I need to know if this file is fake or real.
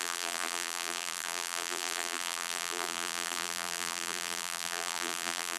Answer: fake